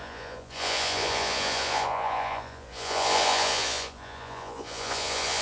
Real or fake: fake